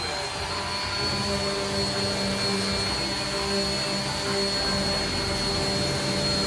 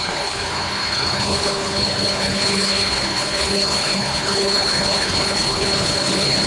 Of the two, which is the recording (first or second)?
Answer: first